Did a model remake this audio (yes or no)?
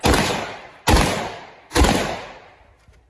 no